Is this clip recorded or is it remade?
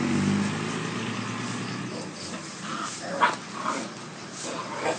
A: recorded